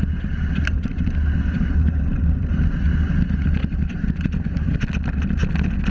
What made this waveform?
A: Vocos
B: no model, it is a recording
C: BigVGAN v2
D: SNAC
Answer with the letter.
B